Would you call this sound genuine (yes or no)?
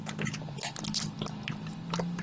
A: yes